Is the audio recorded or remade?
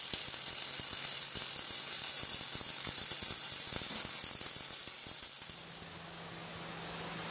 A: recorded